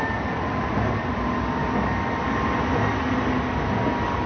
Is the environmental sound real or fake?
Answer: real